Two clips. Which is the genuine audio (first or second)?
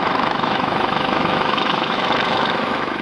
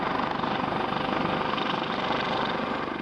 second